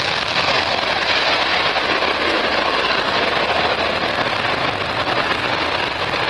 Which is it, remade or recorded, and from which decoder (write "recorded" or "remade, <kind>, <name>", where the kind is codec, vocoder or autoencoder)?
recorded